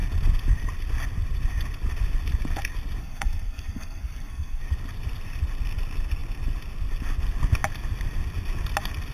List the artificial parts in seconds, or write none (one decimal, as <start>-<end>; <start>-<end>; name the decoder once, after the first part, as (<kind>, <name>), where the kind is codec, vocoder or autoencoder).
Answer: 3.0-4.6 (codec, SNAC)